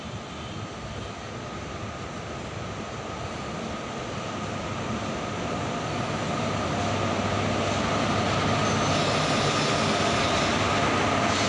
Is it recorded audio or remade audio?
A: recorded